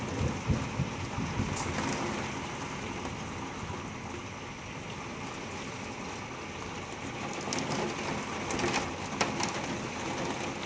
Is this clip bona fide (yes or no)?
yes